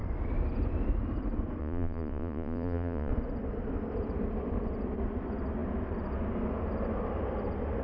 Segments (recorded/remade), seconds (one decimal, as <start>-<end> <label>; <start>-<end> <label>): 0.0-1.6 recorded; 1.6-3.1 remade; 3.1-7.8 recorded